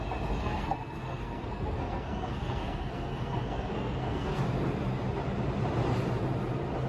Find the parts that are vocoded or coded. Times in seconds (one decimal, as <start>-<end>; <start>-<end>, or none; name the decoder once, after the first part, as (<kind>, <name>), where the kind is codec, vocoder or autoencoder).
0.4-4.4 (codec, SNAC)